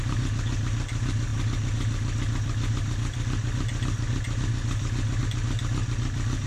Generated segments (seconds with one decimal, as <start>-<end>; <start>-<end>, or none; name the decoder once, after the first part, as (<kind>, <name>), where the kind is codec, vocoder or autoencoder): none

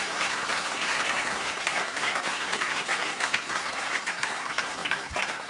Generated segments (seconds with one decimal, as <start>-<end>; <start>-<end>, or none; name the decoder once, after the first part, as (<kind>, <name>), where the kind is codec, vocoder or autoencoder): 0.0-5.5 (codec, SNAC)

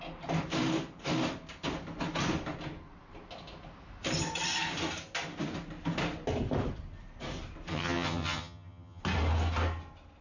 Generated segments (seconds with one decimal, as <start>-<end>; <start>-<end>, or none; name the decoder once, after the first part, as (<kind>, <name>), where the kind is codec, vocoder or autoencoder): 7.7-9.0 (vocoder, HiFi-GAN)